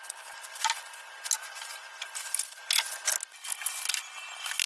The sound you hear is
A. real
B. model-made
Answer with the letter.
A